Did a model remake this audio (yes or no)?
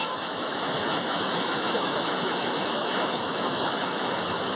yes